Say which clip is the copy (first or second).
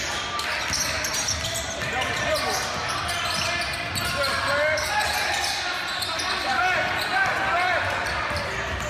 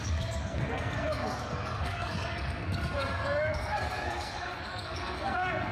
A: second